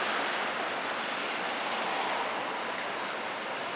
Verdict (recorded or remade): recorded